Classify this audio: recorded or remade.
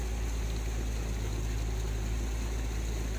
recorded